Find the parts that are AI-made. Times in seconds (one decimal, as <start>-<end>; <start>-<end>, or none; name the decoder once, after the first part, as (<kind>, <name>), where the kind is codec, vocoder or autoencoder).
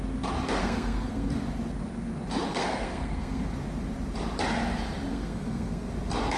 0.6-1.3 (codec, SNAC); 2.5-3.4; 5.1-5.9